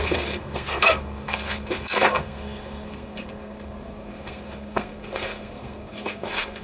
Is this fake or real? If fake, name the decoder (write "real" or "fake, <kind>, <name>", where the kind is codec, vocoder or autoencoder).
fake, codec, SNAC